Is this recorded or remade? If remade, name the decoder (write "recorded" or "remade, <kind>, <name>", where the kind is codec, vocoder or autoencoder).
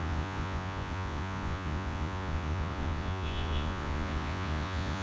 remade, vocoder, Vocos